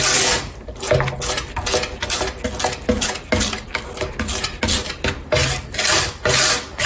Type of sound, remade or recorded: recorded